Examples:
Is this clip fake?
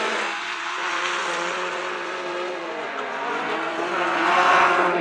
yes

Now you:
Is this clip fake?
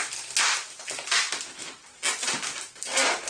no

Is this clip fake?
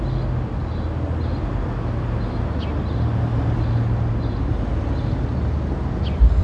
no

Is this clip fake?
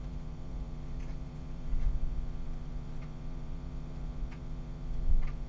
yes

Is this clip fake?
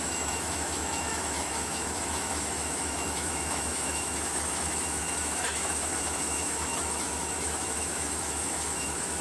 yes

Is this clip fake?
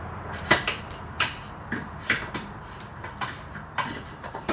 yes